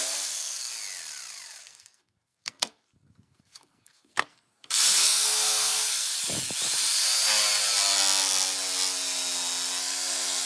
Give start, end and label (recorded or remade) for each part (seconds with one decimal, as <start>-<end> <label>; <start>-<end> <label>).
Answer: 0.0-0.7 remade; 0.7-1.6 recorded; 1.6-6.1 remade; 6.1-9.8 recorded; 9.8-10.5 remade